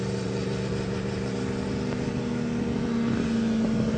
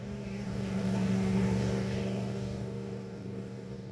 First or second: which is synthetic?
second